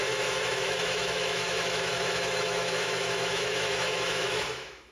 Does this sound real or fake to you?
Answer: fake